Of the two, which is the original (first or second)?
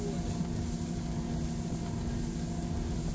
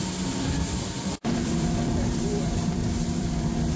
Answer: first